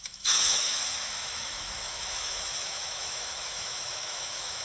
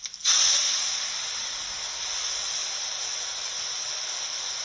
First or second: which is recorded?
second